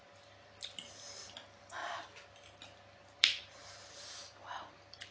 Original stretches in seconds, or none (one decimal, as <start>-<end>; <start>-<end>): 0.0-1.8